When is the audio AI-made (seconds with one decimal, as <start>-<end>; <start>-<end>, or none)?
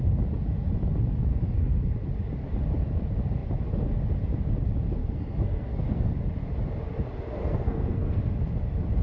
1.3-1.9; 5.0-6.1; 7.4-8.3